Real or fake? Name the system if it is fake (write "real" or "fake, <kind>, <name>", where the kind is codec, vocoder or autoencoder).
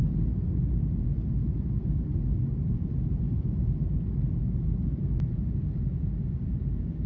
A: real